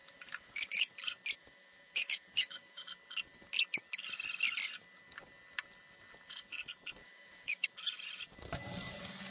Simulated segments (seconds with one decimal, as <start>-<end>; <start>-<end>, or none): 0.0-0.9; 1.4-2.8; 7.0-7.7